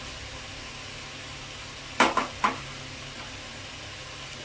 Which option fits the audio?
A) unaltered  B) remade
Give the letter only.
A